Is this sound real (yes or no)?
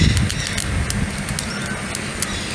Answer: yes